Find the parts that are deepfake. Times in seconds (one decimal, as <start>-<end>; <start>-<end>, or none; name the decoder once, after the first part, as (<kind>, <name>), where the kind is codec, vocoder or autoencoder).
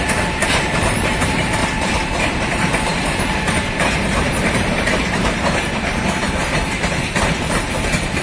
0.0-1.6 (vocoder, BigVGAN v2); 2.4-8.2